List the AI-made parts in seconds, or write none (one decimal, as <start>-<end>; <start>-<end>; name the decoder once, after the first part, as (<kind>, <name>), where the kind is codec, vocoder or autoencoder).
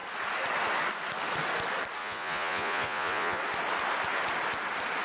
2.0-3.4 (vocoder, Vocos)